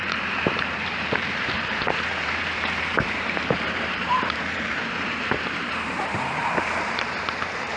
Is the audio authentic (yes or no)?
no